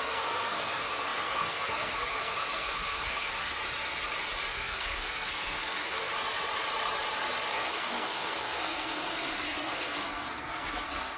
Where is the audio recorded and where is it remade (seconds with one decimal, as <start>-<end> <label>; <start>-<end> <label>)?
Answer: 0.0-3.6 remade; 3.6-4.5 recorded; 4.5-6.1 remade; 6.1-7.5 recorded; 7.5-11.2 remade